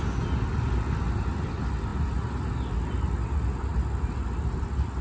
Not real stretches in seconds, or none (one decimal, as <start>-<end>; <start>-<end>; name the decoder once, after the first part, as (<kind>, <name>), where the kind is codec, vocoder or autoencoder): none